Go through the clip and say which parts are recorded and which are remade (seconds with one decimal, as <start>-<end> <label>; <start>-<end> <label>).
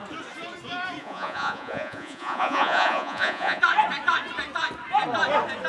0.0-1.0 recorded; 1.0-3.6 remade; 3.6-5.7 recorded